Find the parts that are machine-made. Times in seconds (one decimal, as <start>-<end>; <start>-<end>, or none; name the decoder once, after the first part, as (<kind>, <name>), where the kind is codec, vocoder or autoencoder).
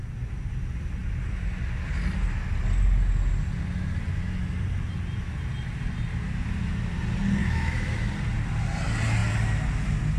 7.4-8.1 (autoencoder, DAC-VAE)